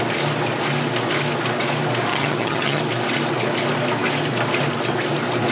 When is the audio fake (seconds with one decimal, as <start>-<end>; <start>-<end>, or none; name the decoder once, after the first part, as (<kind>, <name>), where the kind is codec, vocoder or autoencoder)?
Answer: 2.1-2.8 (vocoder, HiFi-GAN)